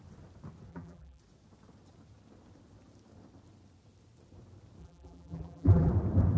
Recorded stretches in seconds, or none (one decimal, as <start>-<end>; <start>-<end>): 0.0-0.7; 1.2-4.8; 5.9-6.4

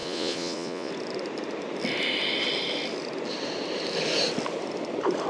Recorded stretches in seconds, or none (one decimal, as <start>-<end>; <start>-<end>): 0.9-5.3

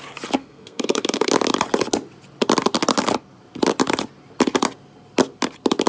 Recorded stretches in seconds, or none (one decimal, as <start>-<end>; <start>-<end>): 0.0-0.4; 1.3-5.9

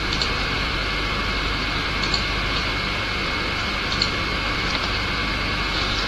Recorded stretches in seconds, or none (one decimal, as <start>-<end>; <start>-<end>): 0.8-4.5; 5.2-6.1

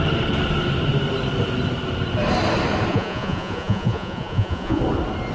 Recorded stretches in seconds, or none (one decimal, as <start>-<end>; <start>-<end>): 0.0-2.9; 4.8-5.3

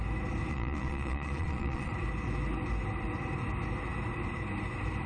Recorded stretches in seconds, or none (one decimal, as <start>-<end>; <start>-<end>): 0.0-0.5; 1.9-5.1

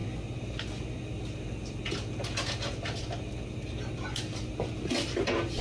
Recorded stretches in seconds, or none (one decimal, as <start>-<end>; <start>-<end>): 0.0-5.6